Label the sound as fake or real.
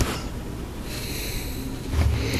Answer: real